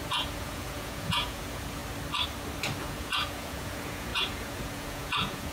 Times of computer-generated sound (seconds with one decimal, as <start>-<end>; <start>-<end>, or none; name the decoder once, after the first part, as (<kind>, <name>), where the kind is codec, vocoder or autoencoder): 0.0-1.8 (vocoder, Vocos); 2.8-5.5

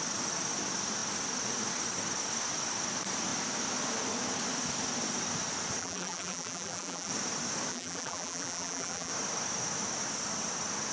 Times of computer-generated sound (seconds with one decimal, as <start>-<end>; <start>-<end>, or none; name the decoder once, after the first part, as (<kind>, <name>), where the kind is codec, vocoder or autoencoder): 5.8-7.1 (vocoder, BigVGAN v2); 7.7-9.1

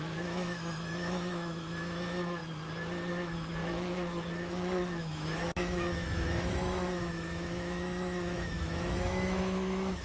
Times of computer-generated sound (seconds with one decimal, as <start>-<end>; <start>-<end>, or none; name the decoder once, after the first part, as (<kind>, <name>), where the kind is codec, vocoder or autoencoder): 0.0-2.4 (autoencoder, DAC-VAE); 3.1-10.0

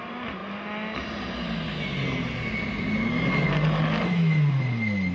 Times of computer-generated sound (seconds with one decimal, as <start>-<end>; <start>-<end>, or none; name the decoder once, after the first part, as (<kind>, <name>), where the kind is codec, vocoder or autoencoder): none